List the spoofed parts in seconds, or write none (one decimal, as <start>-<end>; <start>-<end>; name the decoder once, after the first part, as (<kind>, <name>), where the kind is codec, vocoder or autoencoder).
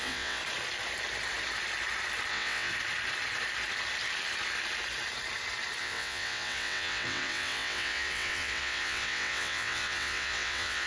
0.0-0.4 (vocoder, WaveNeXt); 2.3-2.7; 5.8-10.9